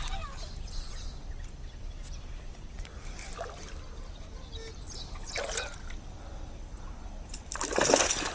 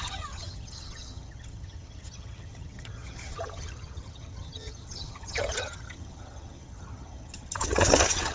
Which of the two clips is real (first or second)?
first